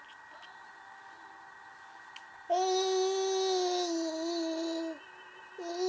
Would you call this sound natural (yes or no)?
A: yes